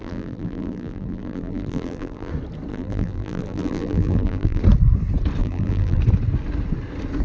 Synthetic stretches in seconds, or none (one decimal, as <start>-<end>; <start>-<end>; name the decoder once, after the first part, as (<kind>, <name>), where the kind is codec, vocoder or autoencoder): 0.0-2.3 (vocoder, BigVGAN v2); 2.7-4.6; 5.4-6.0